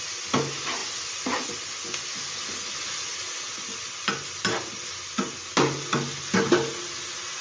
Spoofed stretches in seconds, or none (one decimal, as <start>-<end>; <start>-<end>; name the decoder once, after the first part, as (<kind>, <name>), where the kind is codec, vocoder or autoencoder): none